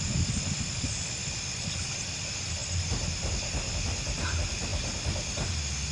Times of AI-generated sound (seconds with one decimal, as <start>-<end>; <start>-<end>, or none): none